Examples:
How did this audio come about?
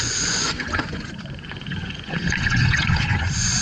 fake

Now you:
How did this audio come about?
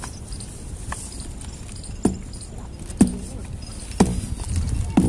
real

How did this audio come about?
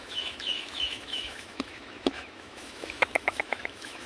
fake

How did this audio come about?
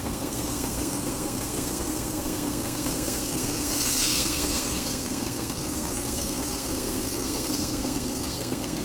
fake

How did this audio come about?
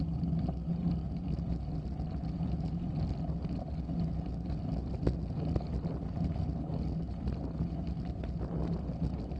real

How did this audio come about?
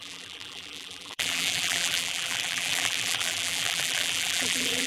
fake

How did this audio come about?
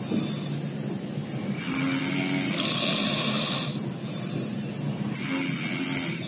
real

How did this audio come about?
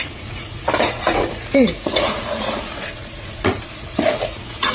fake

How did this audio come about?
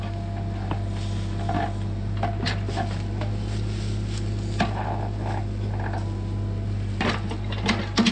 real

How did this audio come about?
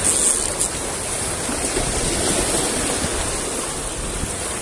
real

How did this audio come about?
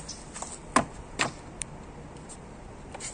real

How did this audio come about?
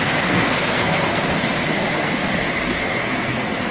fake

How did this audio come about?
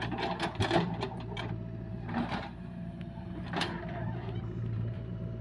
fake